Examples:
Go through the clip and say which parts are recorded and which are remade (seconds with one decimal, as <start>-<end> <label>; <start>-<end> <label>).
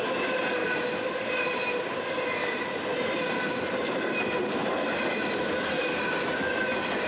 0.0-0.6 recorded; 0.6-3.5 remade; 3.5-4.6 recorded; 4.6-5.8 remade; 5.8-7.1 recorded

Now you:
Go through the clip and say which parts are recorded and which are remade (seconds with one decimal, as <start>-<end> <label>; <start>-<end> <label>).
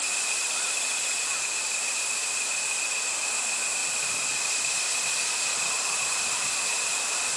0.0-7.4 recorded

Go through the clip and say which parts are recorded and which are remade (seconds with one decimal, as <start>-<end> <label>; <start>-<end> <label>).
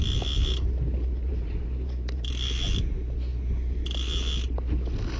0.0-1.3 recorded; 1.3-2.3 remade; 2.3-5.2 recorded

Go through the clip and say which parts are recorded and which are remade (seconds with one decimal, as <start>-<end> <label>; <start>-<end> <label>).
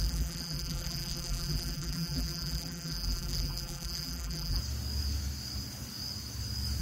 0.0-4.6 remade; 4.6-6.8 recorded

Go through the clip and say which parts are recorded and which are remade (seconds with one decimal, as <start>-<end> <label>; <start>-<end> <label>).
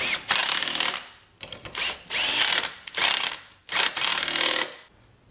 0.0-0.4 recorded; 0.4-2.5 remade; 2.5-5.3 recorded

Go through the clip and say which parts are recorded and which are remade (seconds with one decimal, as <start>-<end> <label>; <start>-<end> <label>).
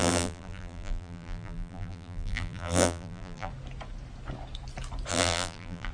0.0-3.5 remade; 3.5-5.1 recorded; 5.1-5.9 remade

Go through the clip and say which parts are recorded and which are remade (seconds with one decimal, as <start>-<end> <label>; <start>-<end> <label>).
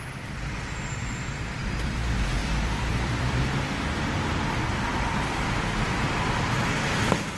0.0-1.6 recorded; 1.6-3.6 remade; 3.6-7.4 recorded